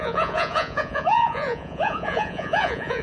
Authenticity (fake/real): fake